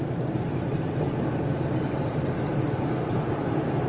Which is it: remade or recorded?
remade